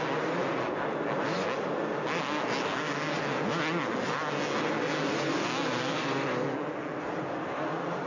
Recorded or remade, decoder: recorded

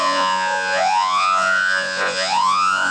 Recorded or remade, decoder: remade, vocoder, Vocos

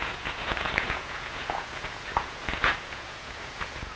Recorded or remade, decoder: remade, vocoder, Vocos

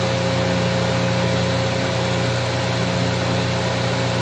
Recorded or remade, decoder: recorded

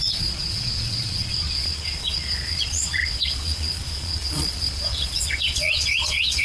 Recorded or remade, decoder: remade, vocoder, Vocos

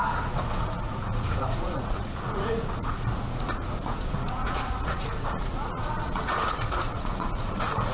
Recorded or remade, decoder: remade, vocoder, Vocos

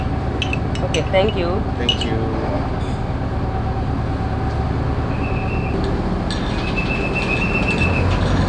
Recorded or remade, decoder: recorded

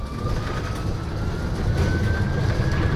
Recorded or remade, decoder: recorded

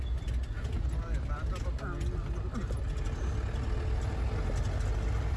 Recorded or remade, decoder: recorded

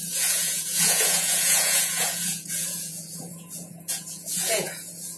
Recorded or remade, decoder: remade, vocoder, Vocos